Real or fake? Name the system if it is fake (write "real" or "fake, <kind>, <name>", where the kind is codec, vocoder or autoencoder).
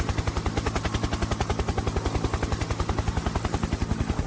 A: real